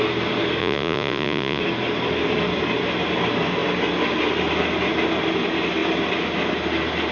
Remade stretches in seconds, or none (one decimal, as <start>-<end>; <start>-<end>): 0.6-1.6

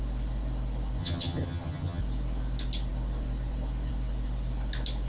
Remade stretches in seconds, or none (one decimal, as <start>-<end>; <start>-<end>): 1.0-2.0